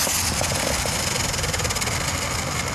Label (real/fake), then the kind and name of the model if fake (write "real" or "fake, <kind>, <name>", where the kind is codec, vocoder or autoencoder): real